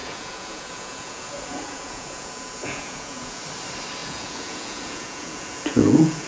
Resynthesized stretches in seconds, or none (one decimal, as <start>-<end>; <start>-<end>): 0.0-3.4; 4.0-6.3